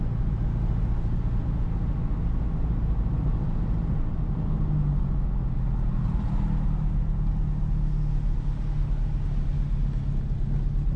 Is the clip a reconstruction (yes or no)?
no